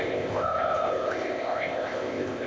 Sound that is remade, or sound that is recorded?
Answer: remade